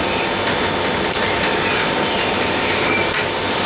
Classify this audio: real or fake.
real